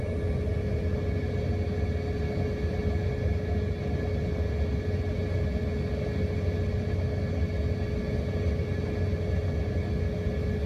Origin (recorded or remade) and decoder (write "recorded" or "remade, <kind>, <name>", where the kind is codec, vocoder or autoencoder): recorded